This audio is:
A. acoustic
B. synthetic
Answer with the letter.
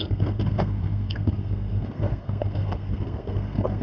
B